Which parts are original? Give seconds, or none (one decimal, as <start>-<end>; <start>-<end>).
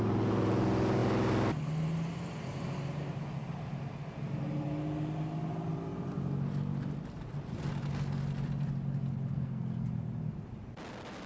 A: 0.0-9.3; 9.9-11.3